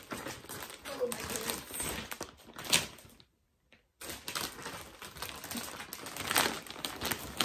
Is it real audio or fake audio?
real